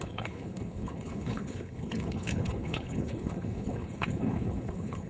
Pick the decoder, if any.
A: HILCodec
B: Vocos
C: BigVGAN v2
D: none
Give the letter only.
A